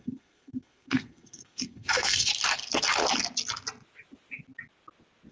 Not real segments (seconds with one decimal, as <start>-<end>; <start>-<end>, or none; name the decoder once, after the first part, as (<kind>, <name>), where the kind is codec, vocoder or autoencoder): 0.0-2.3 (codec, SNAC)